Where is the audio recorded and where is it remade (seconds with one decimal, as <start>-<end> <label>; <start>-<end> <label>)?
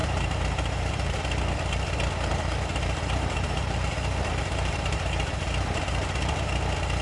0.0-1.2 remade; 1.2-2.3 recorded; 2.3-6.5 remade; 6.5-7.0 recorded